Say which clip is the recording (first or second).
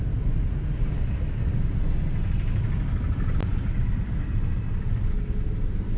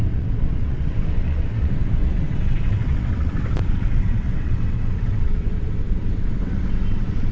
first